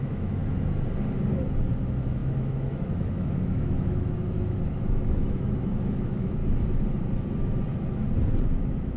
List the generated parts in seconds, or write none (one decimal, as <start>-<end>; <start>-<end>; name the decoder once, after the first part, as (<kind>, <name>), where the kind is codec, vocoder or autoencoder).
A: 0.0-0.4 (autoencoder, DAC-VAE); 1.8-6.4; 8.6-9.0